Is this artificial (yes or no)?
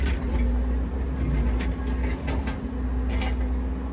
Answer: no